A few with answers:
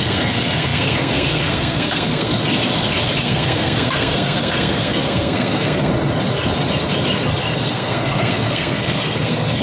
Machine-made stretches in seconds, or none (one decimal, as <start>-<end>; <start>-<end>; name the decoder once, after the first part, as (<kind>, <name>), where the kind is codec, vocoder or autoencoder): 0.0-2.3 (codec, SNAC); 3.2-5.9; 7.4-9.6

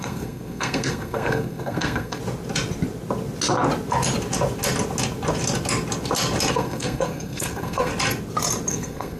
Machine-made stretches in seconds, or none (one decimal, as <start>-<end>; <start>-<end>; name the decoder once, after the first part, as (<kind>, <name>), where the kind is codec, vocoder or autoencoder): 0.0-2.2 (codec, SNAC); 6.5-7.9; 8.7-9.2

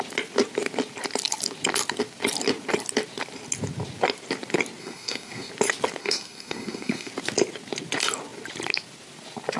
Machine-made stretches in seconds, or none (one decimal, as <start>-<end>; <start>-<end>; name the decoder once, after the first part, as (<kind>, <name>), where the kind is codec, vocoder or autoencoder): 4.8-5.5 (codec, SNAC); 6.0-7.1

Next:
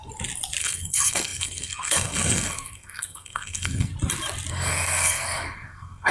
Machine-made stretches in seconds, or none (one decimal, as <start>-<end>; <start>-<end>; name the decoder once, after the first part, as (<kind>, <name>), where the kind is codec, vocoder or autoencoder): 0.6-3.9 (codec, SNAC); 4.5-6.1